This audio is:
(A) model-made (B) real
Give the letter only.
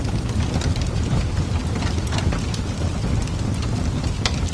B